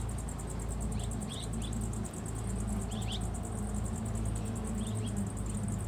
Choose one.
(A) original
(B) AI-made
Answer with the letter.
A